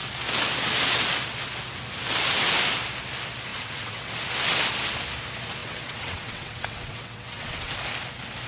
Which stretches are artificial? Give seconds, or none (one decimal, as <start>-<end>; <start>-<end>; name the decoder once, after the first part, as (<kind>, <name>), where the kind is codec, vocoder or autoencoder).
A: 3.5-4.2 (vocoder, WaveNeXt); 5.6-7.7